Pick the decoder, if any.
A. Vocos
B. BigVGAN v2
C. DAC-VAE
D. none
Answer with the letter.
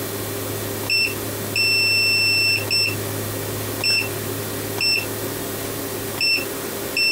D